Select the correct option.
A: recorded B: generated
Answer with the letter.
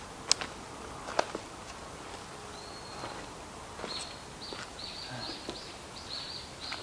A